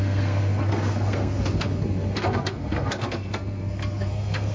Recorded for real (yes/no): no